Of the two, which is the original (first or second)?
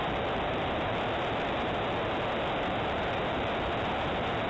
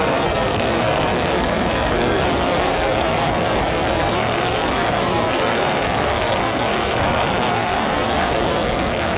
first